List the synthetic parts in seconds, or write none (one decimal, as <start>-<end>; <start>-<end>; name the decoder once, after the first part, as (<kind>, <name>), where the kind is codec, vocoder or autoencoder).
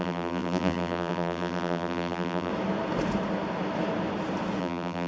0.0-2.5 (vocoder, BigVGAN v2); 4.6-5.1